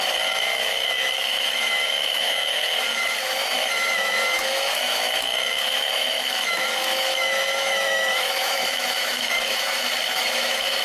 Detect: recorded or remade remade